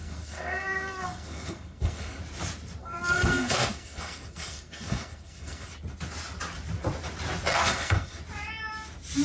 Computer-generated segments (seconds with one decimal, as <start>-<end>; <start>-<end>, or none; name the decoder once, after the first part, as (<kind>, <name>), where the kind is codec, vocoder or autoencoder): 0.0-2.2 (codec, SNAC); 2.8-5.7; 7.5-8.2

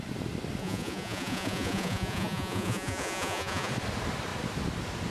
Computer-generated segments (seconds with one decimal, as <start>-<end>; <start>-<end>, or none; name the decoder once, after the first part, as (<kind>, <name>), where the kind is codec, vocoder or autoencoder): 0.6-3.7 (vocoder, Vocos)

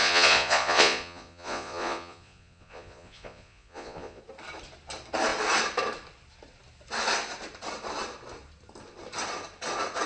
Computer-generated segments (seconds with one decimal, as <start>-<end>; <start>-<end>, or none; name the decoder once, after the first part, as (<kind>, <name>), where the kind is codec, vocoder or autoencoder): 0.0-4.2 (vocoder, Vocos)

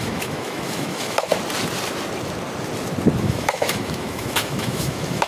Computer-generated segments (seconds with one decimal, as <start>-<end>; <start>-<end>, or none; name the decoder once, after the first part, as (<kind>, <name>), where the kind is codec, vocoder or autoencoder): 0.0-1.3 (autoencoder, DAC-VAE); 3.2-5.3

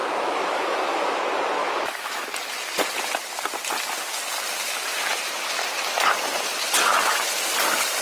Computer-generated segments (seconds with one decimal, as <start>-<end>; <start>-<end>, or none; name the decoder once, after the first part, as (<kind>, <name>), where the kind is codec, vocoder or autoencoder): 0.0-1.2 (autoencoder, DAC-VAE); 1.6-2.2

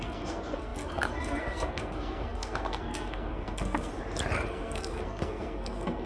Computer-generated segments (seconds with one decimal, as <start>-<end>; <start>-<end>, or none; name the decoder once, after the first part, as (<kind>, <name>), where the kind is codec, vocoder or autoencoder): 0.0-3.9 (codec, SNAC); 4.5-6.1